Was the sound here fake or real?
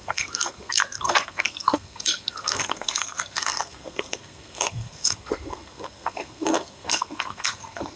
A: fake